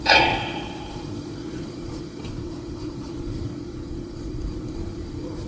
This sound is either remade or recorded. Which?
remade